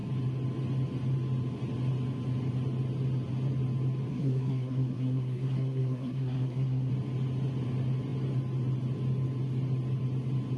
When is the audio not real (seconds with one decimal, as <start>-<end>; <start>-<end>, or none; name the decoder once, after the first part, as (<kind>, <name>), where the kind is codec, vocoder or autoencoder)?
4.1-6.9 (codec, SNAC)